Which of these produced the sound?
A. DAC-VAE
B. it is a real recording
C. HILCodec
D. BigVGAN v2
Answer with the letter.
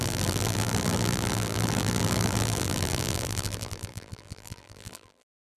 D